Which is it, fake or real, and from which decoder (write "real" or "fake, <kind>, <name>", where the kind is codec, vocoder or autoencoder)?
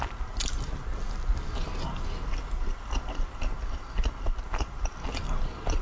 real